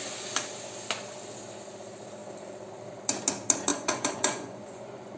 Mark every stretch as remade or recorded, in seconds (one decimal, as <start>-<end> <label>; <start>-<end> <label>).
0.0-3.7 recorded; 3.7-5.2 remade